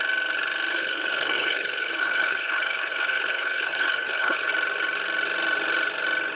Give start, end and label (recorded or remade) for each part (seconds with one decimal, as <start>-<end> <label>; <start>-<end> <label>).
0.0-0.7 recorded; 0.7-4.5 remade; 4.5-6.3 recorded

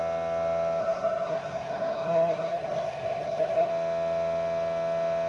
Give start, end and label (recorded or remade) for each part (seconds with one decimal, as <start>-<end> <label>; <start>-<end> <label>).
0.0-0.8 recorded; 0.8-3.7 remade; 3.7-5.3 recorded